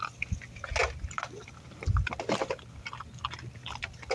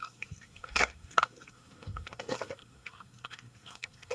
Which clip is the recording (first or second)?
first